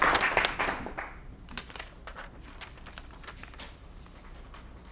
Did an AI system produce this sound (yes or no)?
no